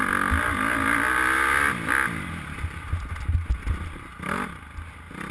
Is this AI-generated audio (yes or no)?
no